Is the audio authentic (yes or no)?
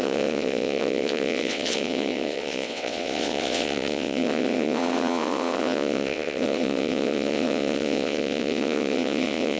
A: no